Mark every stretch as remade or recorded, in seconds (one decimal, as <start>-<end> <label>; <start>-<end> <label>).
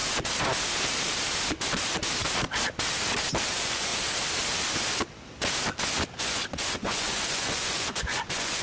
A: 0.0-3.5 recorded; 3.5-3.9 remade; 3.9-6.2 recorded; 6.2-8.6 remade